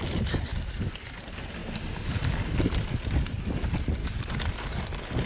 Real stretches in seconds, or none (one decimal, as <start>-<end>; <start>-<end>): 0.0-4.0; 4.8-5.3